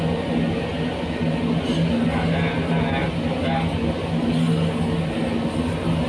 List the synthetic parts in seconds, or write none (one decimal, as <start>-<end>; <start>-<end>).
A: none